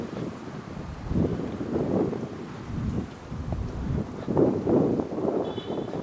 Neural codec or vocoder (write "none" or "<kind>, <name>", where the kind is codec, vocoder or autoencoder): vocoder, BigVGAN v2